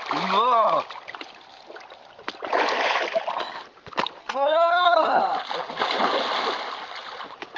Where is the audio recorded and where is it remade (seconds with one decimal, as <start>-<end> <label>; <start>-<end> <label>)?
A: 0.0-4.2 recorded; 4.2-5.2 remade; 5.2-7.6 recorded